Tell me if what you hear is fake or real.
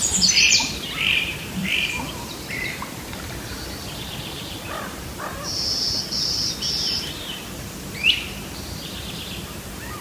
fake